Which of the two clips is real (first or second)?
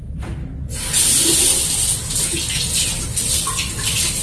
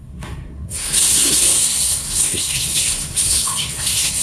first